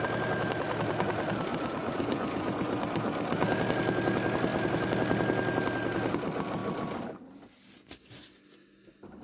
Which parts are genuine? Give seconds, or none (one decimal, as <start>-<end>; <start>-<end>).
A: 0.0-1.5; 2.8-9.2